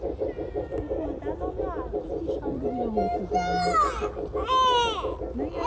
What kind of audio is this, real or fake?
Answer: real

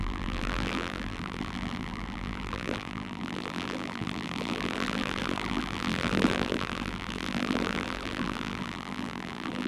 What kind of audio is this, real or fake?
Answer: fake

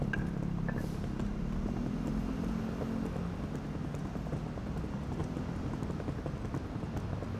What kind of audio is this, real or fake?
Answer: real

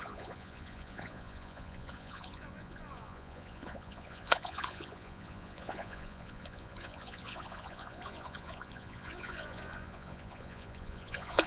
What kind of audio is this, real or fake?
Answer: fake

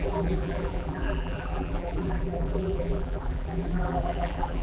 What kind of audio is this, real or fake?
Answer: fake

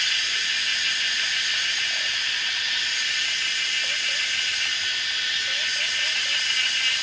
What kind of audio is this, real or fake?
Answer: real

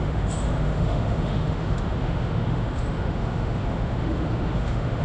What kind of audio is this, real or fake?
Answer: fake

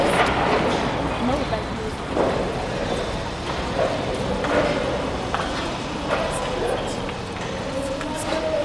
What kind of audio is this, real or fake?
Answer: real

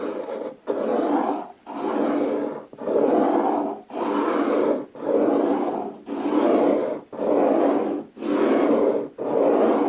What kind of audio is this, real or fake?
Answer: real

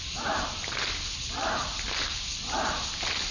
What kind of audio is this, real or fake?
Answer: real